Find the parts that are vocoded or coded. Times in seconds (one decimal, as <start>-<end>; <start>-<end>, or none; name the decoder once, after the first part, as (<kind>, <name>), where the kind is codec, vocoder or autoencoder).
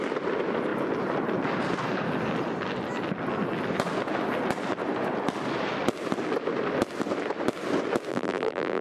8.1-8.8 (vocoder, BigVGAN v2)